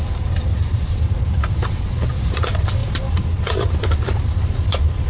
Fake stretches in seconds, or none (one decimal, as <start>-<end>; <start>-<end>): 0.5-1.8; 2.8-3.7